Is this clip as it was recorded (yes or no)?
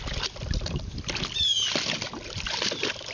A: yes